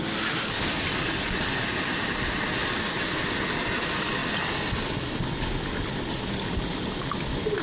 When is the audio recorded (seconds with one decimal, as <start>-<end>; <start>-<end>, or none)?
0.0-7.6